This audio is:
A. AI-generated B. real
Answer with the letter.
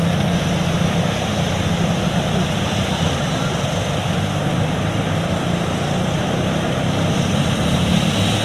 B